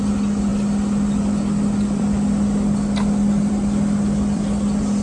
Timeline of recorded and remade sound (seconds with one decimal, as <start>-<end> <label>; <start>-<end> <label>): 0.0-5.0 recorded